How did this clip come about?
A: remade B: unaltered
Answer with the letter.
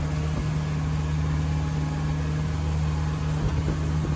B